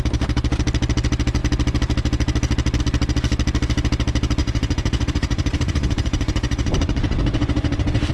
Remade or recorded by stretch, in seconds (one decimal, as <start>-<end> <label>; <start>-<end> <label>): 0.0-4.4 recorded; 4.4-8.1 remade